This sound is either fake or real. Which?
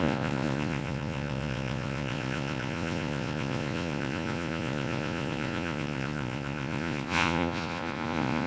fake